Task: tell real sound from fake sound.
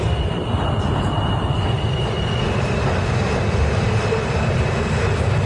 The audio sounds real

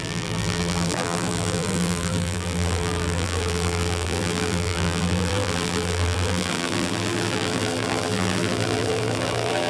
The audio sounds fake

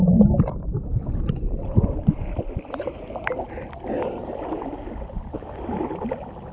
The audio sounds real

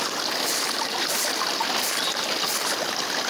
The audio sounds real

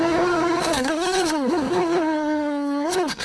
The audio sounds fake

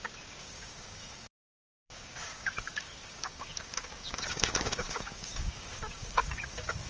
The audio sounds fake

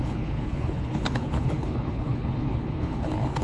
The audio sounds fake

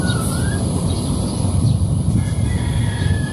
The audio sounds real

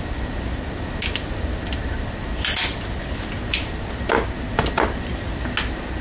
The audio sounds real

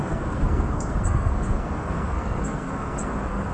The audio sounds fake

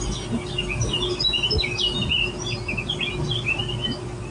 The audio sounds real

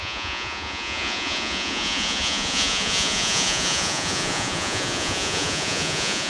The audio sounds fake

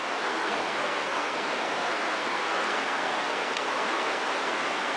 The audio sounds fake